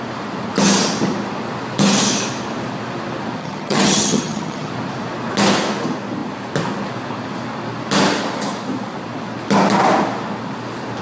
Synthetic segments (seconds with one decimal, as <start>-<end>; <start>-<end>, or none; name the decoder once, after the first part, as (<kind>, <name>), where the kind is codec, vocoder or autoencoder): 3.4-4.7 (vocoder, HiFi-GAN)